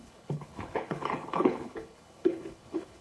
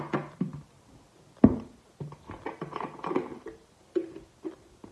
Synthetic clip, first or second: first